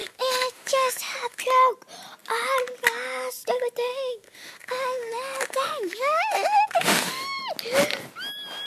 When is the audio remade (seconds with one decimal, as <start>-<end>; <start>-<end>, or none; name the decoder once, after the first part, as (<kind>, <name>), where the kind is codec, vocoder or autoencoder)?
0.0-1.4 (autoencoder, DAC-VAE); 3.9-7.4